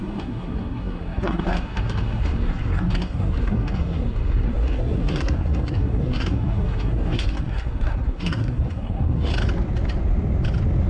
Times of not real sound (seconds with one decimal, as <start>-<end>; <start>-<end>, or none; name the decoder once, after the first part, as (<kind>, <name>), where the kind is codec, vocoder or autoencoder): 0.0-9.3 (codec, SNAC)